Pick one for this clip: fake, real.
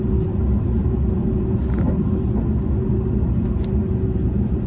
real